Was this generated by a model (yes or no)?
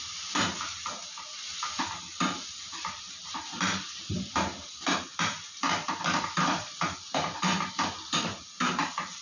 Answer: yes